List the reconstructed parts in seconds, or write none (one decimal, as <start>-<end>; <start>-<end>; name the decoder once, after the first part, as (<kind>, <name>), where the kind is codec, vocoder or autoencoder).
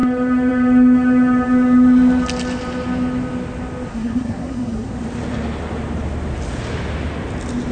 3.9-4.9 (codec, SNAC)